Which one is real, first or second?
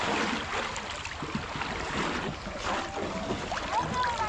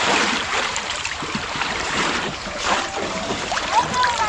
first